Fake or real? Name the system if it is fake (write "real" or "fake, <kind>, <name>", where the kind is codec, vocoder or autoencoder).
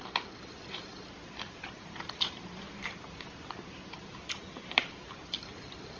fake, vocoder, BigVGAN v2